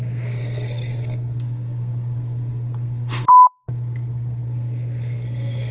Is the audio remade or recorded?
remade